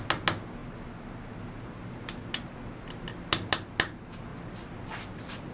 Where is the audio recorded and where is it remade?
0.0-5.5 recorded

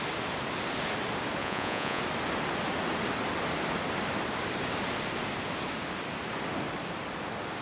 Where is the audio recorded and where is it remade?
0.0-1.4 recorded; 1.4-2.0 remade; 2.0-7.6 recorded

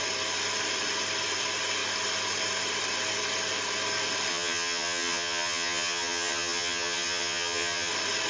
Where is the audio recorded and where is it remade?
0.0-4.3 recorded; 4.3-7.9 remade; 7.9-8.3 recorded

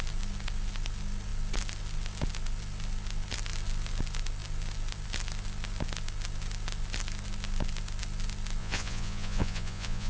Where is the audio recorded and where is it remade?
0.0-8.6 recorded; 8.6-10.1 remade